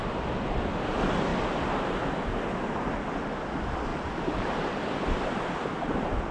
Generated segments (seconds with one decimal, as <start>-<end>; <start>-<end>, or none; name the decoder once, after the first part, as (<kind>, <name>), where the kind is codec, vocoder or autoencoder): 3.9-4.8 (vocoder, BigVGAN v2)